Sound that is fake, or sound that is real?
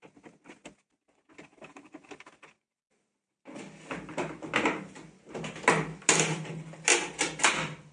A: real